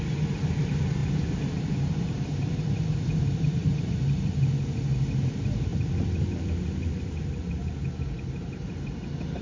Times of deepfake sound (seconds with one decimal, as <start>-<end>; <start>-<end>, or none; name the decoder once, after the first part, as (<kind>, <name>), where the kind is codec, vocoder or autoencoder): 1.0-3.9 (vocoder, BigVGAN v2)